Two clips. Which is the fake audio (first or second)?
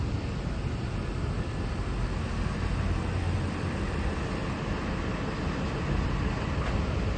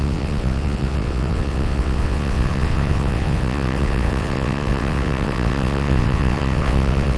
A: second